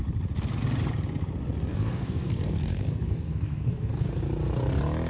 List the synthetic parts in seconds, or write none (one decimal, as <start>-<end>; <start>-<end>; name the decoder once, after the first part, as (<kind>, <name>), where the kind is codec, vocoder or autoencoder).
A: 1.7-4.2 (codec, SNAC)